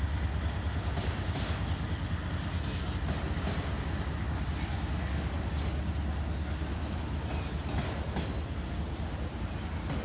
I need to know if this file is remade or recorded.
recorded